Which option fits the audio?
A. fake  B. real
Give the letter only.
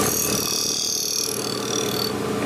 B